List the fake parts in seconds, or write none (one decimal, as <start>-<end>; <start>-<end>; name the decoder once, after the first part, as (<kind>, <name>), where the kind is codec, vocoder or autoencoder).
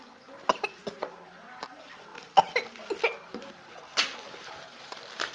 none